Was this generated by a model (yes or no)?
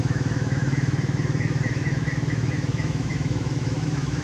yes